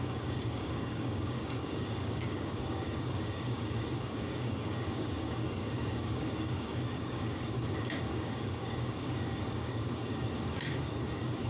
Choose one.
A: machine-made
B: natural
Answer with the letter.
A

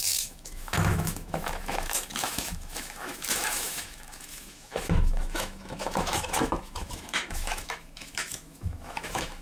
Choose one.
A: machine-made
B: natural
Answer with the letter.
A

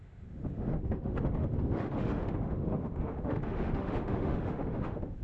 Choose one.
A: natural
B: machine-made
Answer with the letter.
B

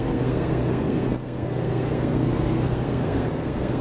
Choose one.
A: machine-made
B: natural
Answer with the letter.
A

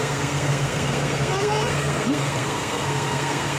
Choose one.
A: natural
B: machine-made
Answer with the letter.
B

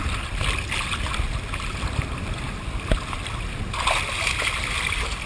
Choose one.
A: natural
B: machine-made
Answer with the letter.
A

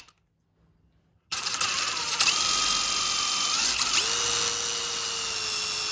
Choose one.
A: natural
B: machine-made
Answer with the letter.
A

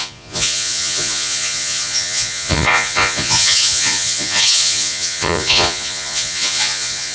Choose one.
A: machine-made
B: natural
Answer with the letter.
A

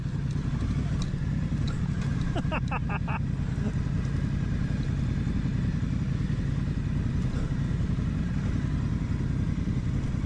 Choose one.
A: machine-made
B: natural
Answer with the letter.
B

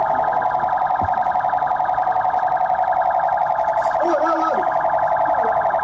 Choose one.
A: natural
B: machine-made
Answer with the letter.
A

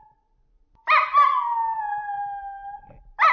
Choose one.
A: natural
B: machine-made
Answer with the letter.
A